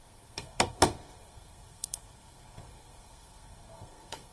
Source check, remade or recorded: remade